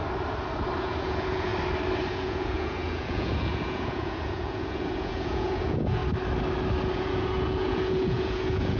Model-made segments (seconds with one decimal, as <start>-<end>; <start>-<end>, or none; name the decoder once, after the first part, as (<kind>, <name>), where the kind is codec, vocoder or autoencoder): 0.8-1.5 (vocoder, Vocos); 2.1-6.0; 6.9-8.8

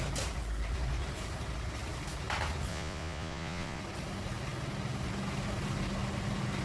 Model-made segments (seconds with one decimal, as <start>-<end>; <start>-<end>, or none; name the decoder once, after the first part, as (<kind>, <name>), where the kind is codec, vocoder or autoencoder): 2.7-3.8 (vocoder, Vocos)

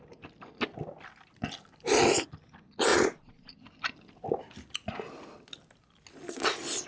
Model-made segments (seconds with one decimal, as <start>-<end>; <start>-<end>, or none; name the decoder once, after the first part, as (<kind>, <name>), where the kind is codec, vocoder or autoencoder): 2.9-3.5 (vocoder, Vocos)